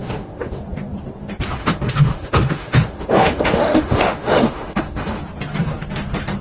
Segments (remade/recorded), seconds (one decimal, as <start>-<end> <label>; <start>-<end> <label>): 0.0-0.6 remade; 0.6-1.6 recorded; 1.6-5.2 remade; 5.2-6.4 recorded